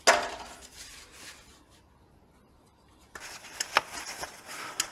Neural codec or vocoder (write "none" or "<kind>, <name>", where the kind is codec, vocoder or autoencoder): none